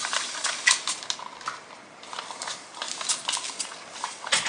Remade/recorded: recorded